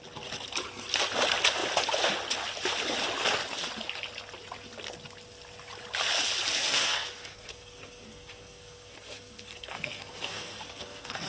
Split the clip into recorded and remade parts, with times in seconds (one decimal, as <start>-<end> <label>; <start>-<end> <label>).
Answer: 0.0-6.6 recorded; 6.6-11.3 remade